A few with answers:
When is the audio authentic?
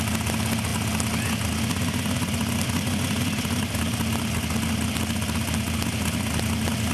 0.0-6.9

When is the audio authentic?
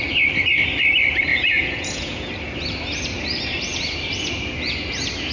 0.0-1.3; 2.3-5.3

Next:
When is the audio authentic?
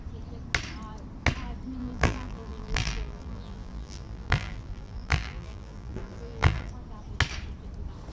0.0-1.8; 6.7-8.1